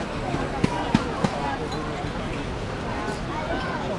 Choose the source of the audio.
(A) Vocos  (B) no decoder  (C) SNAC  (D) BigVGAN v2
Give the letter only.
B